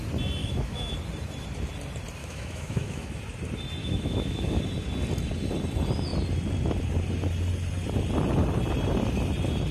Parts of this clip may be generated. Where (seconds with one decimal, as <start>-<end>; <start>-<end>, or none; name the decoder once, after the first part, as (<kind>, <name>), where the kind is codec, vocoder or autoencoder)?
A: 0.4-0.9 (autoencoder, DAC-VAE); 2.2-3.2; 3.8-4.6